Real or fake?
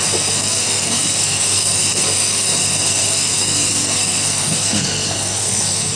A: fake